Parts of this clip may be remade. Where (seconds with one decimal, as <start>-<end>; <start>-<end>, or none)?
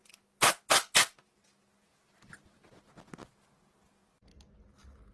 none